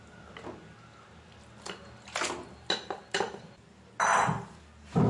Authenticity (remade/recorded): recorded